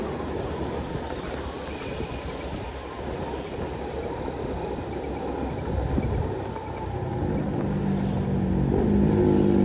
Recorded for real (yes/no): yes